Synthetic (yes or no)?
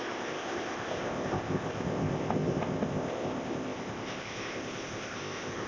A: yes